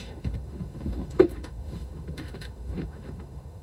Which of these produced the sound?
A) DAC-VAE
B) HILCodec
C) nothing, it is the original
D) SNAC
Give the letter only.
A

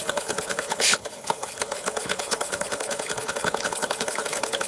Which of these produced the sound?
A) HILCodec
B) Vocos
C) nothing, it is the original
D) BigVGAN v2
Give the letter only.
A